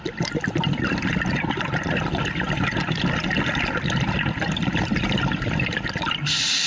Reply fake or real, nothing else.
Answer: real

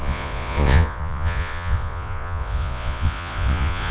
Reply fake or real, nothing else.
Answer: fake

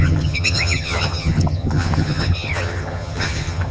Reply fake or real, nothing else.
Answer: fake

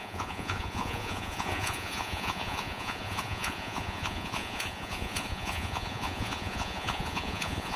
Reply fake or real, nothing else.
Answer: fake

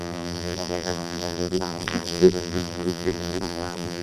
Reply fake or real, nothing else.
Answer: fake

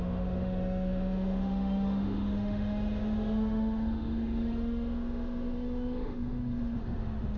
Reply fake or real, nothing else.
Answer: fake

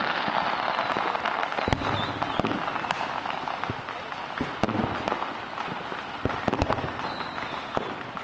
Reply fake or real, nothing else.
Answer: real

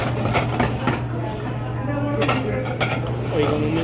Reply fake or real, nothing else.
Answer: real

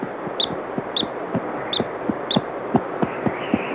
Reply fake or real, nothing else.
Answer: real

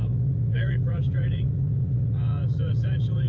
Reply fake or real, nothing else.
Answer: fake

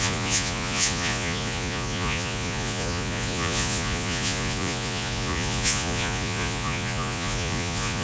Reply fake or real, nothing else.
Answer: fake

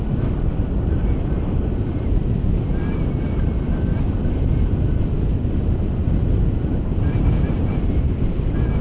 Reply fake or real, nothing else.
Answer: real